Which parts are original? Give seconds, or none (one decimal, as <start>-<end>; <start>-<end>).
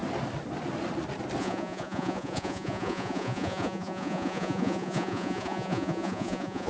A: 0.0-1.4